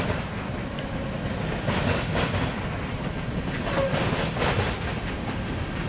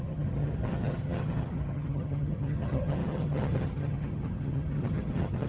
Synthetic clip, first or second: second